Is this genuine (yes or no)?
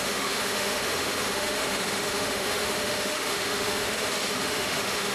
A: no